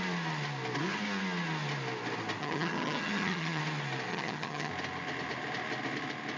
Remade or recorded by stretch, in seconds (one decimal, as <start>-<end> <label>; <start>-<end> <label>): 0.0-2.4 recorded; 2.4-3.6 remade; 3.6-4.1 recorded; 4.1-4.7 remade; 4.7-6.4 recorded